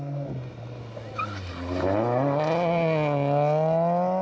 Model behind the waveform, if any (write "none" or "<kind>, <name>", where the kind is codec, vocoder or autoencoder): none